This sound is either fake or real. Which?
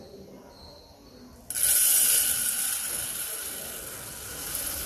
real